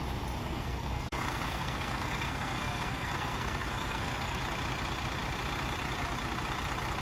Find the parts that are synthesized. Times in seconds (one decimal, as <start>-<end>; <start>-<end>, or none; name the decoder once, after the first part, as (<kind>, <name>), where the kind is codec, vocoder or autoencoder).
0.4-4.4 (codec, SNAC)